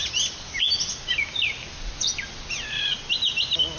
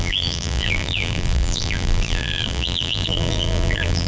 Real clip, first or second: first